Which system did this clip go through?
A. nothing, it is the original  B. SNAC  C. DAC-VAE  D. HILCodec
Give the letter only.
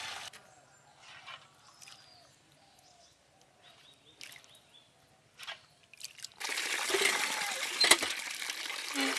A